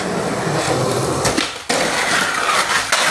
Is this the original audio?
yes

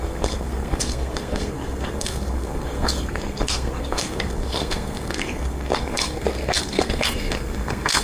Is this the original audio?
no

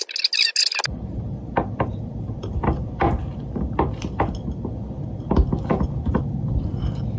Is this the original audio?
yes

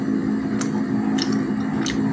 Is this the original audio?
yes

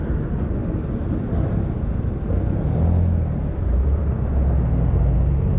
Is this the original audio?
yes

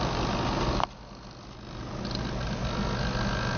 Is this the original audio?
yes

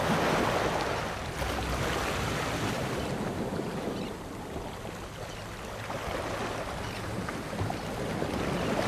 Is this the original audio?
yes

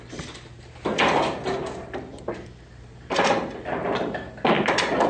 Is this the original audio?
yes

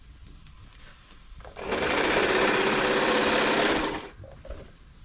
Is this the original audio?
yes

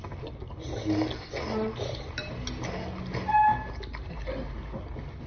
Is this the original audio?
yes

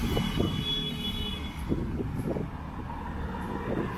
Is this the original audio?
yes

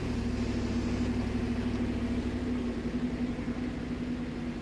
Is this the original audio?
yes